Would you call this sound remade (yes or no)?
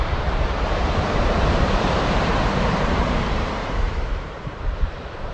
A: yes